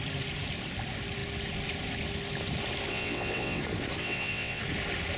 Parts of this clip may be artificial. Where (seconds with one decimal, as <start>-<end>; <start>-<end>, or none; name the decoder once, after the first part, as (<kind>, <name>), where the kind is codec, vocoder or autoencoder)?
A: 2.9-3.6 (vocoder, WaveNeXt); 4.0-4.6